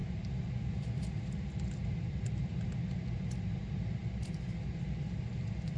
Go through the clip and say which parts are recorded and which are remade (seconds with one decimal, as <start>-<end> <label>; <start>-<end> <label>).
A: 0.0-5.8 recorded